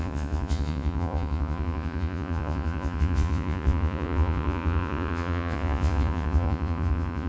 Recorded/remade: remade